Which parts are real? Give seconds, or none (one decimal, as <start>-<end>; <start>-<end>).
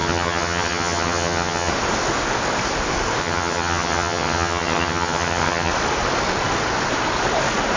1.7-3.2; 5.7-7.8